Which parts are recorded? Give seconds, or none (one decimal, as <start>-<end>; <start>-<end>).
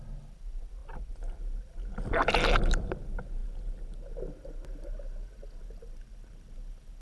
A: 0.0-0.8; 1.4-7.0